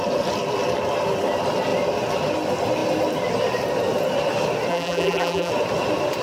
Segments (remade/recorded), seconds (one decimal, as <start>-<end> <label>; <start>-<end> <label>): 0.0-4.7 recorded; 4.7-5.5 remade; 5.5-6.2 recorded